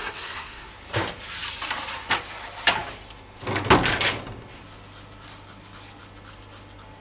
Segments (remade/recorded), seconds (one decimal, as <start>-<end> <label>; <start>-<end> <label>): 0.0-0.7 remade; 0.7-7.0 recorded